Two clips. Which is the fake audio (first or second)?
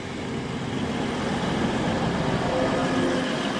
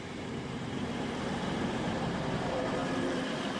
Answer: second